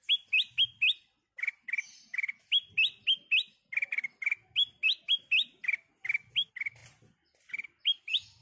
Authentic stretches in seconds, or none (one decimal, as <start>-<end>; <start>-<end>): 0.0-8.4